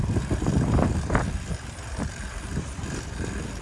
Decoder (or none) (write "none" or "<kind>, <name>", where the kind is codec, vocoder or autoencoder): none